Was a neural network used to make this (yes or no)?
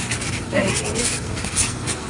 yes